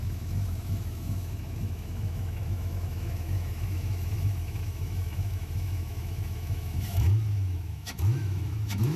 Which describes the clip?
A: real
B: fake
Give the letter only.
B